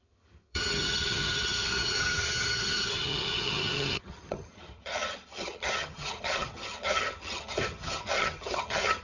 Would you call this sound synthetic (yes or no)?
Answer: yes